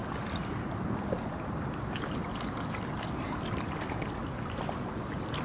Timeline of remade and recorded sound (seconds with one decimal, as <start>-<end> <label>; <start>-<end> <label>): 0.0-5.4 recorded